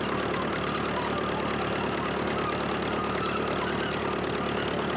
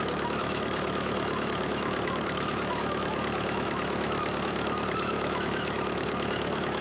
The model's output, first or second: second